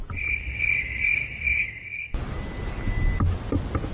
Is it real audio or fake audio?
real